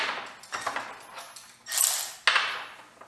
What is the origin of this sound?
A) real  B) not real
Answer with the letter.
A